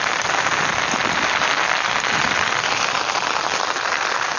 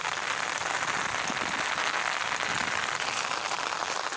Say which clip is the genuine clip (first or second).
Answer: second